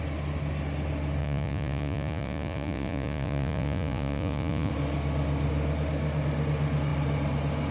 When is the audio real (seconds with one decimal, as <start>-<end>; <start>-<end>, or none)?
0.0-1.2; 4.7-7.7